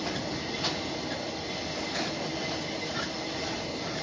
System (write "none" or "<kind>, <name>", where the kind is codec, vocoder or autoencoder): none